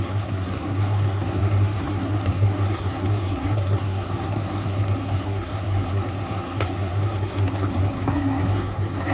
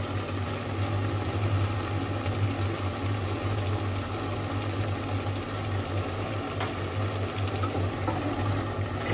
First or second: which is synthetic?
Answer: first